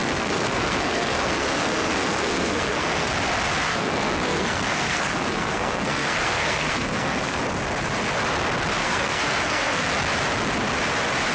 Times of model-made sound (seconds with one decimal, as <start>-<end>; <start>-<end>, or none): 0.0-3.1; 3.7-7.4; 8.8-9.9

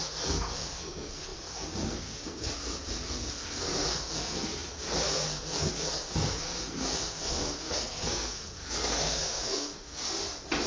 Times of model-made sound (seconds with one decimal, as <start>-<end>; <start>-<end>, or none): 0.0-10.0

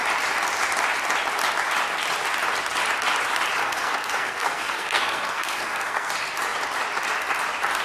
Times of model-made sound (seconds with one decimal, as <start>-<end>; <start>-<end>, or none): 3.6-6.1